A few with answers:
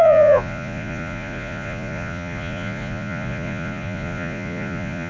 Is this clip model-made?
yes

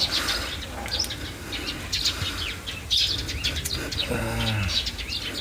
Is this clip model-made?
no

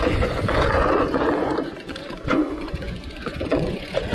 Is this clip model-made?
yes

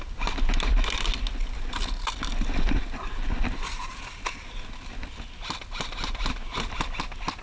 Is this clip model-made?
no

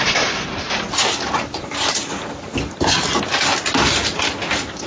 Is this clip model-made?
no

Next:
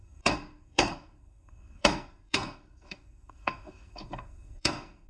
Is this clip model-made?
yes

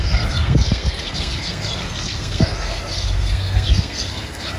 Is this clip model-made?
yes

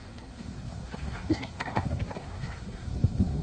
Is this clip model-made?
yes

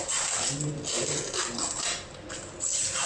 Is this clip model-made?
no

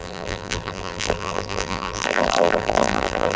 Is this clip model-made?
yes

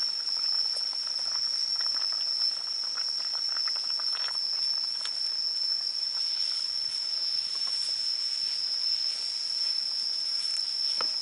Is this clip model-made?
no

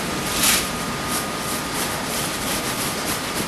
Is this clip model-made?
yes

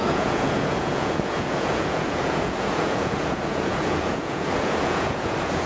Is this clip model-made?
yes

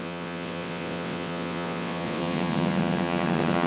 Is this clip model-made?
yes